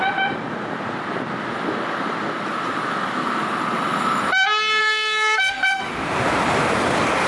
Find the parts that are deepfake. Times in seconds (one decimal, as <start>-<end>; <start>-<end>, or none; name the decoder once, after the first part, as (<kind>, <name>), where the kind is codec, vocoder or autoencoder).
4.8-5.8 (codec, SNAC)

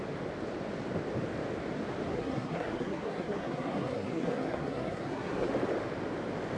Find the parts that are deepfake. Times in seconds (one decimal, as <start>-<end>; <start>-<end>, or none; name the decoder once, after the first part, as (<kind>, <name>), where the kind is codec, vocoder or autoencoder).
2.1-5.5 (codec, SNAC)

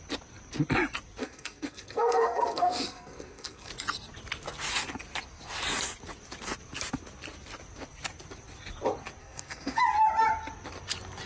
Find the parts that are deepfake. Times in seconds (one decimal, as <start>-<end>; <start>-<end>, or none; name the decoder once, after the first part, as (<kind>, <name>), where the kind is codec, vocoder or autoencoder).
1.2-3.7 (codec, SNAC); 9.2-9.8